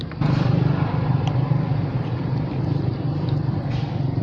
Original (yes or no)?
no